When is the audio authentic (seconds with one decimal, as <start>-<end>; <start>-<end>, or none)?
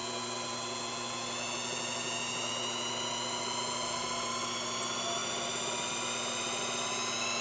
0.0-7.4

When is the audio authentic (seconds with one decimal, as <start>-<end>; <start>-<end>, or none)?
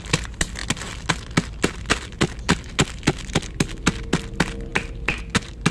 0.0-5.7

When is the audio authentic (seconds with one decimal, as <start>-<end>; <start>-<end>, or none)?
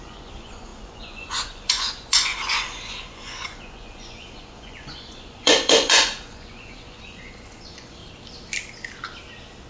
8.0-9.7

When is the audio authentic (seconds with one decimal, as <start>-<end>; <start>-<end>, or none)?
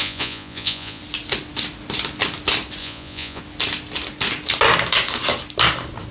1.0-2.8; 3.4-6.1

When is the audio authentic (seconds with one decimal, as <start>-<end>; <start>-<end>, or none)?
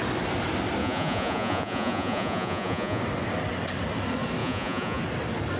0.0-0.8; 3.0-4.4; 5.0-5.6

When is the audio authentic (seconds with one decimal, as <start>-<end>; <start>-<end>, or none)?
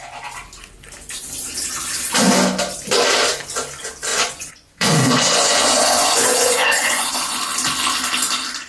0.0-4.1; 7.4-8.7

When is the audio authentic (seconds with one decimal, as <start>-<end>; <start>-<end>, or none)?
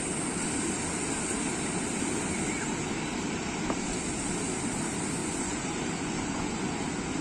0.0-5.2; 6.8-7.2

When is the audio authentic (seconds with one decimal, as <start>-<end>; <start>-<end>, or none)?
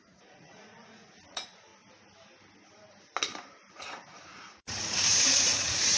1.7-3.7